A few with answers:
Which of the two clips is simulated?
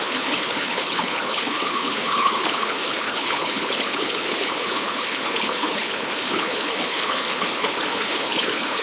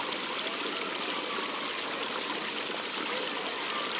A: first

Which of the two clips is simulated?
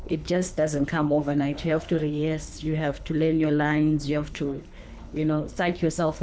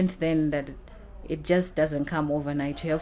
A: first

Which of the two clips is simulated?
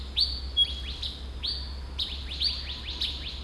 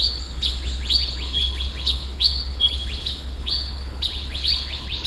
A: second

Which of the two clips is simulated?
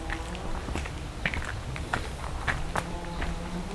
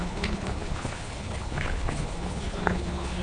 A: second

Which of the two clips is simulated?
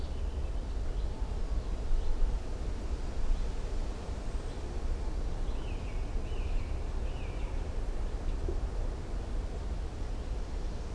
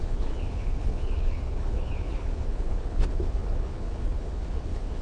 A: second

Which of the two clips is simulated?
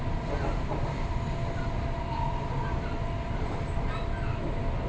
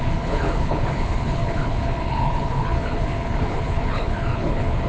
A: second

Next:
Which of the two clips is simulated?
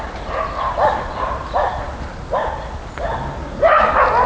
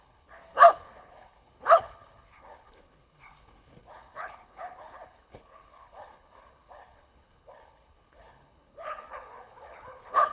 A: second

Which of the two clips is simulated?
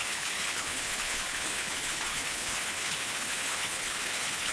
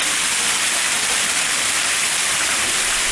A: first